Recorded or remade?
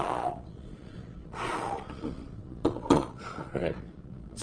remade